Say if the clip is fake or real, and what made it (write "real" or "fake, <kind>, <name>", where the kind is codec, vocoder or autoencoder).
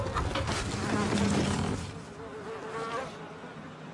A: real